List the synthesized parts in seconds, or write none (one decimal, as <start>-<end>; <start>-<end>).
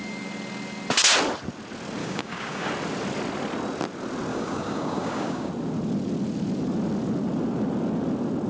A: 2.0-2.7; 4.3-5.5